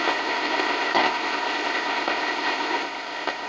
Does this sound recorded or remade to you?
remade